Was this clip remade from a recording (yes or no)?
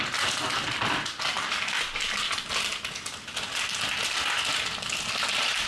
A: no